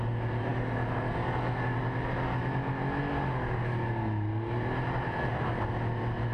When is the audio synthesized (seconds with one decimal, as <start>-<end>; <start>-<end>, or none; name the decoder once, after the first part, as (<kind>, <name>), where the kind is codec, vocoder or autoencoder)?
none